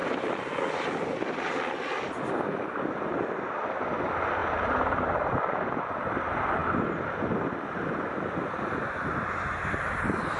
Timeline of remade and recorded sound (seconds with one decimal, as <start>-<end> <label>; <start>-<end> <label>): 0.0-4.4 recorded; 4.4-6.1 remade; 6.1-10.4 recorded